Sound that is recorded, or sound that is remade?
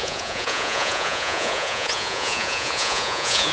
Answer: remade